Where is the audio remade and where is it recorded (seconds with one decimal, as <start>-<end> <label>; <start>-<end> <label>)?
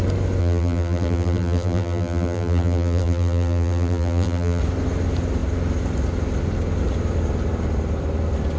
0.0-0.4 recorded; 0.4-4.6 remade; 4.6-8.6 recorded